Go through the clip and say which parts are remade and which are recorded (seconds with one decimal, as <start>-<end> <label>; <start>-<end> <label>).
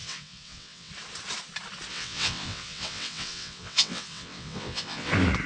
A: 0.0-0.9 remade; 0.9-1.9 recorded; 1.9-5.1 remade; 5.1-5.5 recorded